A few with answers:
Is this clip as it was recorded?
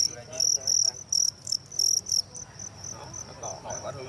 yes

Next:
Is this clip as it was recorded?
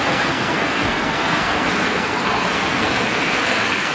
no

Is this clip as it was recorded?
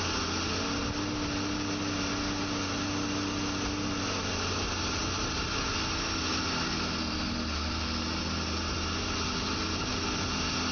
yes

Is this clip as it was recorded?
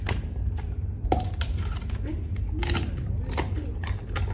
yes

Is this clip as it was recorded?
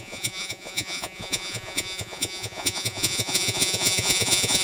no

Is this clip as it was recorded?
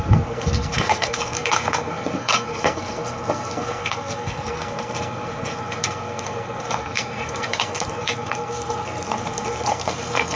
no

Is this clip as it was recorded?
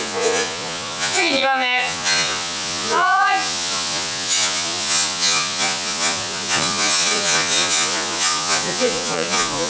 no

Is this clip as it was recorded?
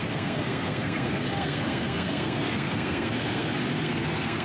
no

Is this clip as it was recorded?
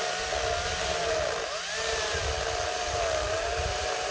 yes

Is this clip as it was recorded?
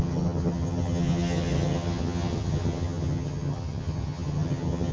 no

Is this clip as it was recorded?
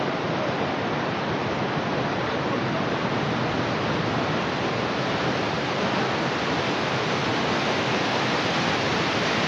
yes